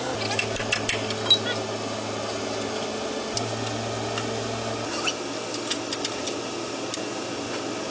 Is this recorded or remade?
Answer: recorded